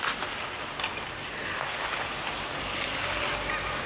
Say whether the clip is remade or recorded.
recorded